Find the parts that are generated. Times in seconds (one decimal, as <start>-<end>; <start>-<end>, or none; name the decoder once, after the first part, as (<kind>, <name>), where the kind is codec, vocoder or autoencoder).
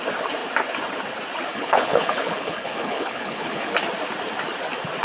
1.5-3.7 (codec, HILCodec)